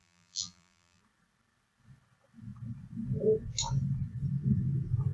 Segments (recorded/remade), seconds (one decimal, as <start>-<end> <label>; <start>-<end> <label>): 0.0-1.0 remade; 1.0-5.1 recorded